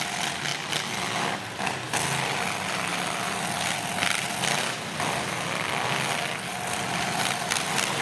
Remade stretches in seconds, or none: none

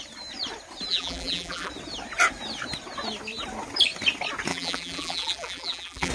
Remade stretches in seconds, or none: 0.9-1.7 (vocoder, BigVGAN v2); 4.5-6.1

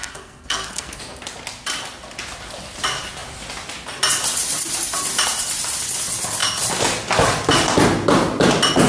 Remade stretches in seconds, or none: 0.0-1.0 (codec, SNAC)

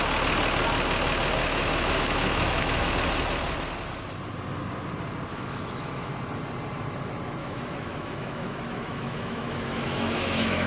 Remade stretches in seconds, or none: 1.4-2.9 (autoencoder, DAC-VAE); 5.3-6.1; 7.4-10.7